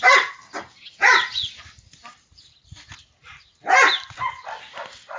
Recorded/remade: recorded